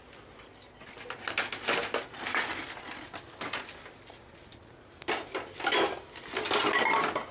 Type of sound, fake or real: real